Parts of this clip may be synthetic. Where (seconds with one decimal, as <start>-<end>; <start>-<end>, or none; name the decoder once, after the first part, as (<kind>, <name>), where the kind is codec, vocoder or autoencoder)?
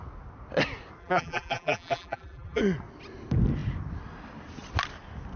1.0-2.6 (vocoder, BigVGAN v2)